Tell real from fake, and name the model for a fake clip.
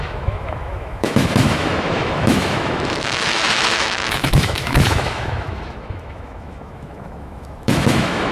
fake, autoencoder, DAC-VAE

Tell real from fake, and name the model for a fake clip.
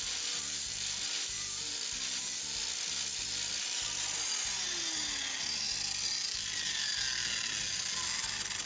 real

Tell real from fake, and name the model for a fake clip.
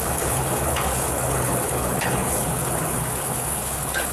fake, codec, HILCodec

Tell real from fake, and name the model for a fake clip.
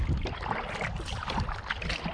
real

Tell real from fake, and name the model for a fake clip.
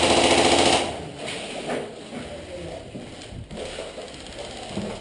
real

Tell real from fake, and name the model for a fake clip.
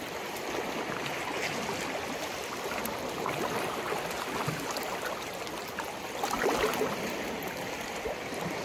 real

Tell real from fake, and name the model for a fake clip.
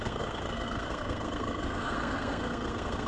fake, codec, SNAC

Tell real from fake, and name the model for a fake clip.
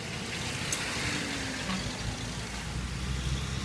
real